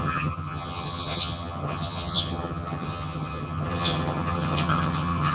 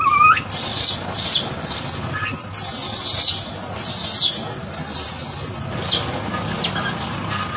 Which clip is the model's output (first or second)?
first